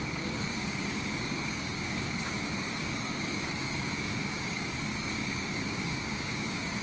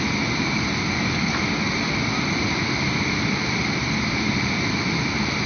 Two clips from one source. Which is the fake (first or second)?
first